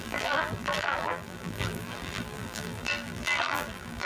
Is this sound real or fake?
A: fake